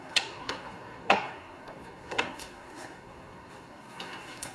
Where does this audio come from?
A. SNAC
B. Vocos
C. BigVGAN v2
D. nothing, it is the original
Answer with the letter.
A